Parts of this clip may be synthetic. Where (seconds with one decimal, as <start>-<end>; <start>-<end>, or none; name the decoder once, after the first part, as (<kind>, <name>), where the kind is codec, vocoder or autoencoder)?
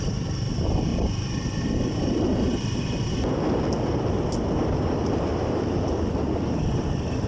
0.0-7.3 (vocoder, BigVGAN v2)